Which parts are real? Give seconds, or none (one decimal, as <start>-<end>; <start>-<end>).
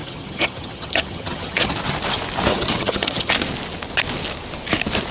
1.7-2.5; 3.3-5.1